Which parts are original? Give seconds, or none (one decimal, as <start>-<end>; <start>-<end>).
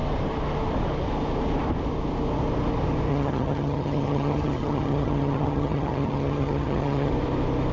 0.0-3.1; 7.1-7.7